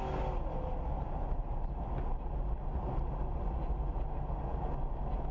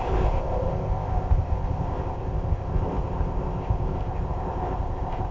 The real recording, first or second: first